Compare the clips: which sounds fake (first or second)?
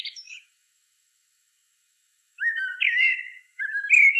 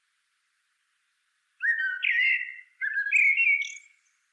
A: first